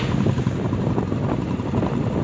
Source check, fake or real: real